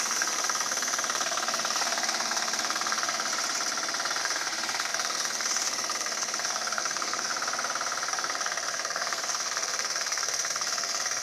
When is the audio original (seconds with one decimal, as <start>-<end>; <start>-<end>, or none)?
3.3-4.2; 7.3-8.1